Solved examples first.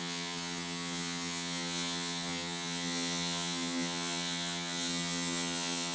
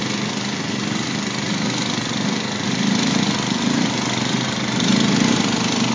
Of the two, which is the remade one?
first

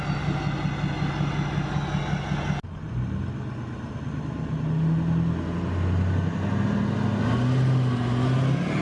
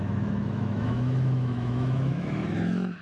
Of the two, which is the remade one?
second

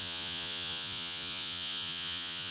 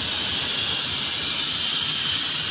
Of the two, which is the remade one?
first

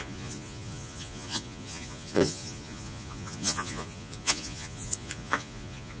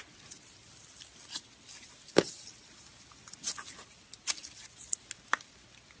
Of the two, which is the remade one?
first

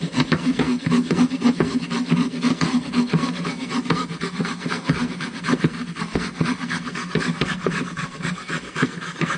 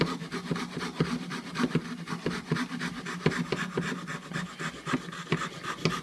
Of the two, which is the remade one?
first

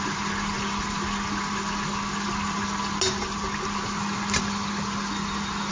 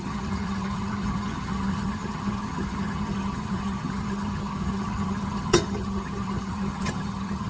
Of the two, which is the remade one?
second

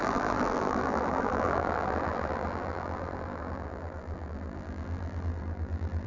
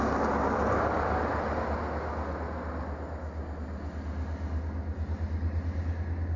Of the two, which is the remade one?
first